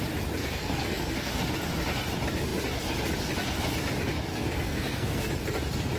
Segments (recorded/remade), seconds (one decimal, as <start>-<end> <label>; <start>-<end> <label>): 0.0-0.4 recorded; 0.4-1.3 remade; 1.3-4.3 recorded; 4.3-5.3 remade; 5.3-6.0 recorded